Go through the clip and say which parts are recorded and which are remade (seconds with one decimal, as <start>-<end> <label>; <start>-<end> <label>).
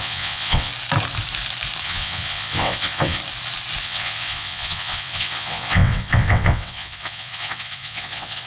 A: 0.0-0.7 remade; 0.7-1.8 recorded; 1.8-3.2 remade; 3.2-3.8 recorded; 3.8-8.5 remade